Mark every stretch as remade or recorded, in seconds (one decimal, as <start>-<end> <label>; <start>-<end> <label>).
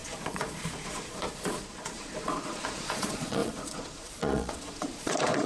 0.0-5.5 remade